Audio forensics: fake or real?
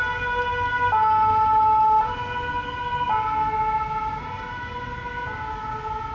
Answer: real